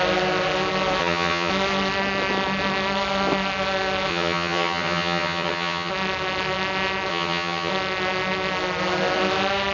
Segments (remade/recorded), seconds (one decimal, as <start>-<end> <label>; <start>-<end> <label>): 0.0-1.0 recorded; 1.0-1.5 remade; 1.5-4.1 recorded; 4.1-5.9 remade; 5.9-7.1 recorded; 7.1-7.7 remade; 7.7-9.7 recorded